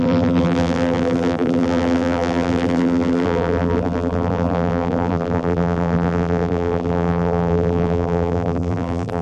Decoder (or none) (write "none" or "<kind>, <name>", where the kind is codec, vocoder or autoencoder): vocoder, BigVGAN v2